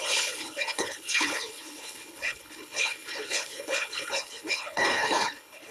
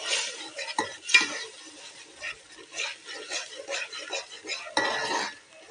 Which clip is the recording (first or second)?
second